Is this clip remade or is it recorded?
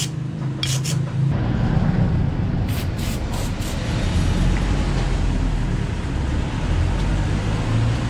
recorded